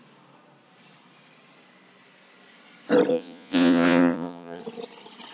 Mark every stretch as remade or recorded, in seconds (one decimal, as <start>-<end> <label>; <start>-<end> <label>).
0.0-3.1 recorded; 3.1-4.6 remade; 4.6-5.3 recorded